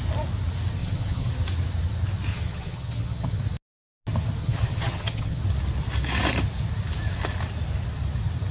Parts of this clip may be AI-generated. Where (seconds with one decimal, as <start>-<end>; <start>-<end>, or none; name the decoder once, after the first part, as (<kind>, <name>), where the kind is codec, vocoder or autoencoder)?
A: 0.8-1.3 (vocoder, HiFi-GAN); 2.3-3.4; 4.4-5.4